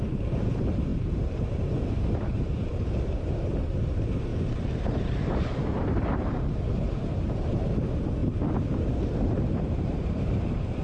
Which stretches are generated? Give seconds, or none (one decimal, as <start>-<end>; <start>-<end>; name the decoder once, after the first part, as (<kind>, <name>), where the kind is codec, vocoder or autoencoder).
0.0-10.8 (vocoder, BigVGAN v2)